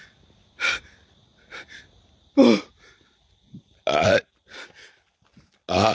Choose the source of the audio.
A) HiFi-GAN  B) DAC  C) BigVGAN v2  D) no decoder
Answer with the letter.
D